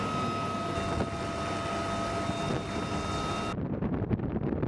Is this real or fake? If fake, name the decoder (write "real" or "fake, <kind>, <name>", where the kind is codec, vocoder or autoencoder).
real